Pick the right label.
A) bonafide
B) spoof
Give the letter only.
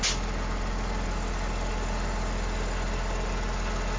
A